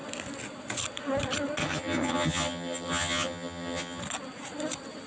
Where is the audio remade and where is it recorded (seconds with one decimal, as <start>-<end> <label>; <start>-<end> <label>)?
0.0-1.6 recorded; 1.6-4.0 remade; 4.0-5.1 recorded